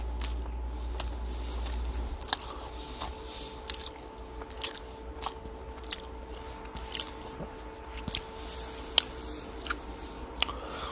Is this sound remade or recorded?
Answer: recorded